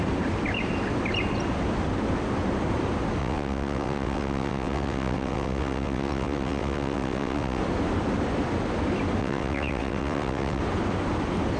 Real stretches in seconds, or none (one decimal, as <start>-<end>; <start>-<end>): 0.0-3.2; 7.6-9.2; 10.6-11.6